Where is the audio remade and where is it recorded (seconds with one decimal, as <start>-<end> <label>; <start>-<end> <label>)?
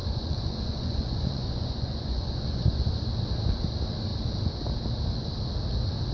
0.0-2.9 remade; 2.9-6.1 recorded